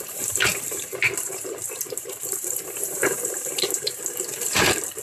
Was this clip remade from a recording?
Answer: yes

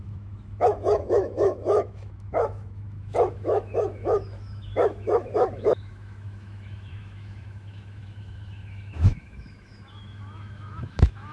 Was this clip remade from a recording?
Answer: yes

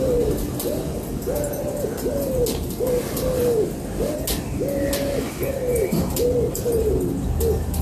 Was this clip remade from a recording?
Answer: no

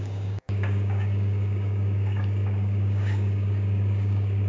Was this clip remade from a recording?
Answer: yes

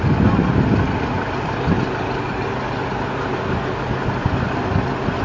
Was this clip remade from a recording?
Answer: no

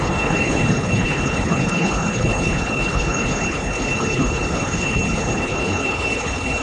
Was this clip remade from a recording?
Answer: yes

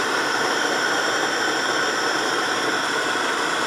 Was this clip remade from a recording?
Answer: yes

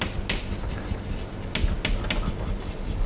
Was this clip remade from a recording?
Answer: no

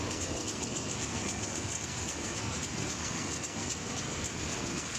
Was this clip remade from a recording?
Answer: yes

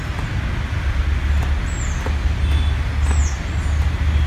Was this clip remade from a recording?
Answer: no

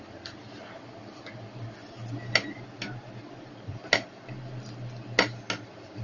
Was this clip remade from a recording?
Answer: no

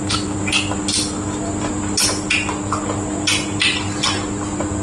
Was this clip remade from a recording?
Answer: no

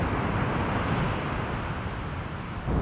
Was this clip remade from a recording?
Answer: no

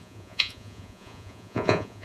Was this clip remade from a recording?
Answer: yes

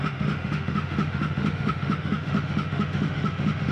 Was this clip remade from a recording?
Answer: yes